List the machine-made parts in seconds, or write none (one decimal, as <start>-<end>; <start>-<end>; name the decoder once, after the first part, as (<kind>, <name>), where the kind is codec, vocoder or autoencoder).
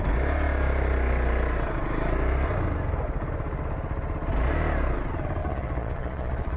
5.4-6.6 (vocoder, Vocos)